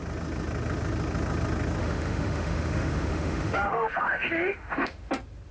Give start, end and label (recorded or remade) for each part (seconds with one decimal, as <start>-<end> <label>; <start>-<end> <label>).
0.0-1.8 recorded; 1.8-5.1 remade; 5.1-5.5 recorded